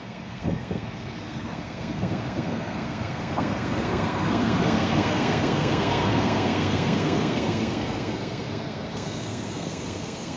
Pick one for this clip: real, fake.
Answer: fake